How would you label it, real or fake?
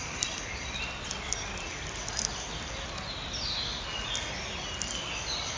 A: real